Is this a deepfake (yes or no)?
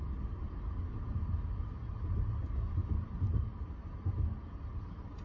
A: no